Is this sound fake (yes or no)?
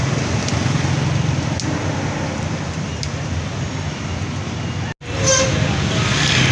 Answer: no